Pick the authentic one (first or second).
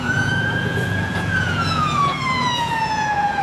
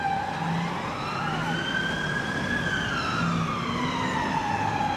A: second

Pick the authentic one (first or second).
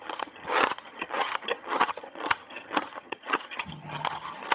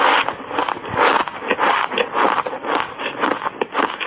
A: second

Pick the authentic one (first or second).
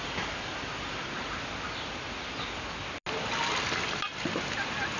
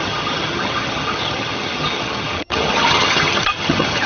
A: first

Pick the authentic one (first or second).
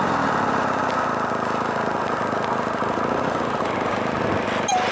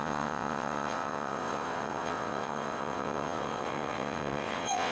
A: first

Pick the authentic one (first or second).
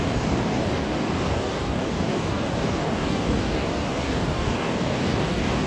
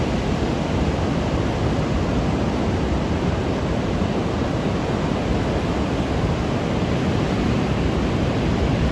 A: second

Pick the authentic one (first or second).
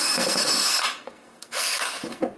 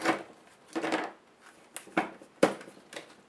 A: second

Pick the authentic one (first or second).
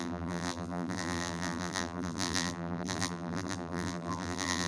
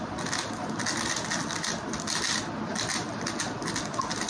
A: second